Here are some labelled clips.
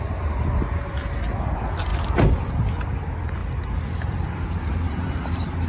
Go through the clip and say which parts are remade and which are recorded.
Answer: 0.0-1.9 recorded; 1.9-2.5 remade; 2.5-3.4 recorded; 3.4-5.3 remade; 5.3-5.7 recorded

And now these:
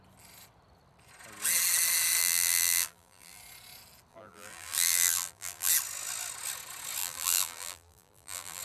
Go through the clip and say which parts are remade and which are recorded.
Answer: 0.0-2.2 recorded; 2.2-3.4 remade; 3.4-4.1 recorded; 4.1-5.7 remade; 5.7-7.0 recorded; 7.0-8.6 remade

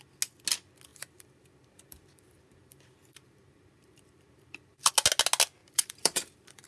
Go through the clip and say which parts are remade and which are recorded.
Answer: 0.0-0.9 recorded; 0.9-4.9 remade; 4.9-5.6 recorded; 5.6-6.7 remade

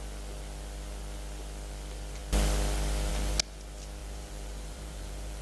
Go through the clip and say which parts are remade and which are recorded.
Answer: 0.0-4.0 recorded; 4.0-5.4 remade

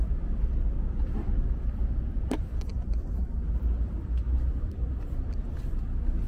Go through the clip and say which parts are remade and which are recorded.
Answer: 0.0-6.3 remade